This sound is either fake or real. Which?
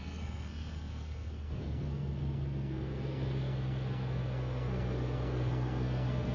fake